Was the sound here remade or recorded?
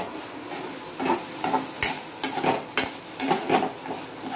recorded